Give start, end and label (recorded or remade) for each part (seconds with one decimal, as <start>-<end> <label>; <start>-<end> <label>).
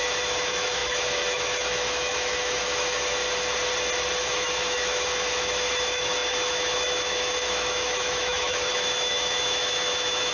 0.0-3.2 remade; 3.2-4.2 recorded; 4.2-10.3 remade